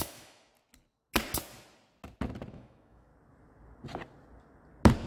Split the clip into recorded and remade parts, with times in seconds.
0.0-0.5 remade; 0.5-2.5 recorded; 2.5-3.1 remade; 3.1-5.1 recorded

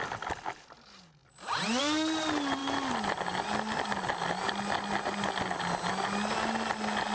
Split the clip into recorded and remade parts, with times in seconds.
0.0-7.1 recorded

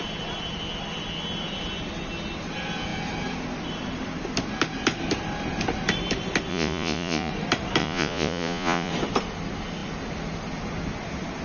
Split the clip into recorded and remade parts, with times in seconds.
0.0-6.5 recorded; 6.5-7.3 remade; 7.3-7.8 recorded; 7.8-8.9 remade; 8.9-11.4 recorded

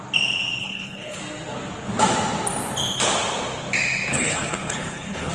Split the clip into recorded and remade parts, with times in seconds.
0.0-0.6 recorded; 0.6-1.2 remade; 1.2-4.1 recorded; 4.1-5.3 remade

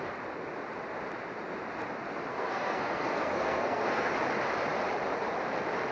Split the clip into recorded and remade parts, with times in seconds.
0.0-2.3 recorded; 2.3-4.1 remade; 4.1-5.9 recorded

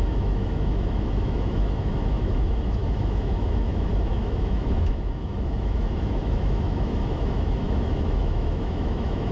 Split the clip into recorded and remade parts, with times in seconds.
0.0-9.3 remade

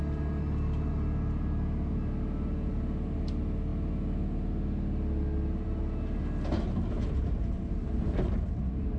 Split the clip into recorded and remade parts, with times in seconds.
0.0-9.0 recorded

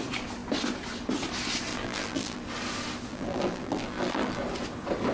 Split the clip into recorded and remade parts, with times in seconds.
0.0-1.7 recorded; 1.7-2.4 remade; 2.4-3.1 recorded; 3.1-4.4 remade; 4.4-5.1 recorded